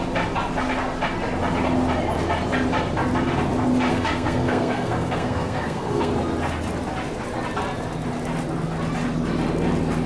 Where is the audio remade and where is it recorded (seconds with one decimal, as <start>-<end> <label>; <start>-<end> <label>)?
0.0-3.9 recorded; 3.9-6.1 remade; 6.1-10.1 recorded